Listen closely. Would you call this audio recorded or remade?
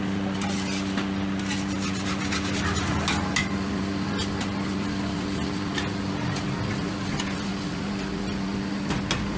recorded